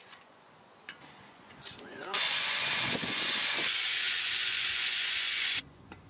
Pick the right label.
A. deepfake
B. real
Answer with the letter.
A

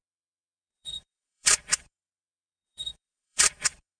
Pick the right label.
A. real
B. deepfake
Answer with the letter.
B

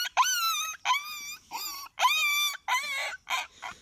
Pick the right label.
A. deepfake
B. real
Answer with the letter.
B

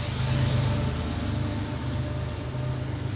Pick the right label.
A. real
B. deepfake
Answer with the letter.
A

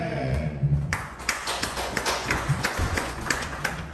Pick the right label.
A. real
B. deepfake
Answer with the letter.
B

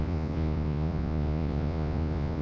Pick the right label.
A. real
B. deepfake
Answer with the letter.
B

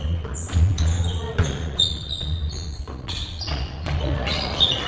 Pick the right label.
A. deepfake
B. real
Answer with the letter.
A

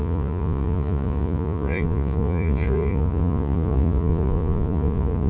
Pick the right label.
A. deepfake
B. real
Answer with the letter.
A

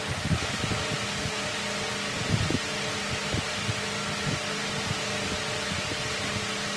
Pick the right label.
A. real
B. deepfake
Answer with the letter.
A